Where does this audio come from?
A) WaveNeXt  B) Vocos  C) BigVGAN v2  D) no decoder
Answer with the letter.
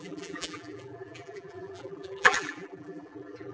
C